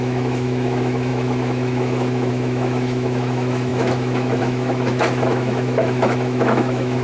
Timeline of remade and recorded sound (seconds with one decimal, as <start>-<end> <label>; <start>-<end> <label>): 0.0-7.0 remade